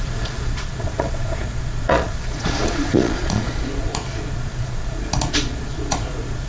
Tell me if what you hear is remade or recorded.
remade